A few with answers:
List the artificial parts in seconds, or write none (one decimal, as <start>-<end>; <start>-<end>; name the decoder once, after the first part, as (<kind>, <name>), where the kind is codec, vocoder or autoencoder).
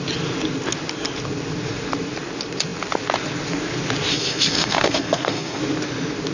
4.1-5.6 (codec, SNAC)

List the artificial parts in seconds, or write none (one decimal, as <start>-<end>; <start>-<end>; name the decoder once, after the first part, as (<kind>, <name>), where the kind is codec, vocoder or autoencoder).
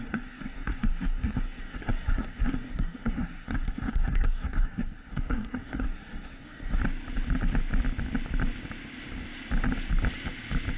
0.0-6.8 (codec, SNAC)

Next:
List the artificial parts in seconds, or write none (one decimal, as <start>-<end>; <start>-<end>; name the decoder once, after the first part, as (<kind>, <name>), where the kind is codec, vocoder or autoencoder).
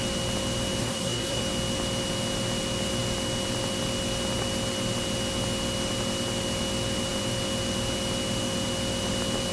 0.8-1.4 (codec, SNAC)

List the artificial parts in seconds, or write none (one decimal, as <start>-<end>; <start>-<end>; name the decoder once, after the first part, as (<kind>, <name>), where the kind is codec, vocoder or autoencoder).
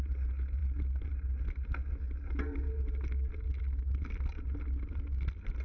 none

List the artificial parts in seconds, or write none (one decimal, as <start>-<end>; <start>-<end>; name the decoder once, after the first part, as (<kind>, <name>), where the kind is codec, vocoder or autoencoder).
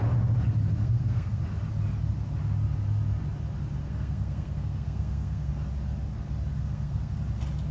0.8-1.4 (codec, SNAC); 3.8-5.5; 6.5-7.2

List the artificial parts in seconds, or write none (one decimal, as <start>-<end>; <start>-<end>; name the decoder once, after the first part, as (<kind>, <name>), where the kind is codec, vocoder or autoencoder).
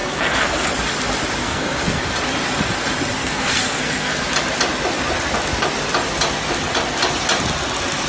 0.0-0.7 (codec, SNAC); 1.4-2.1; 3.2-4.2